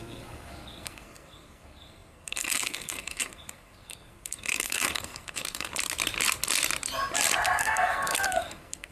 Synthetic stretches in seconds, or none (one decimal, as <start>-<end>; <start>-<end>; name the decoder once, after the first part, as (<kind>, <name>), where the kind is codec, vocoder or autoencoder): 0.0-5.7 (codec, SNAC); 7.6-8.9